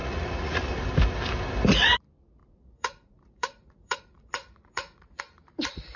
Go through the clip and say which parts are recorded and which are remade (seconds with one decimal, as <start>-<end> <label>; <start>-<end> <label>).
0.0-0.8 remade; 0.8-2.4 recorded; 2.4-5.2 remade; 5.2-6.0 recorded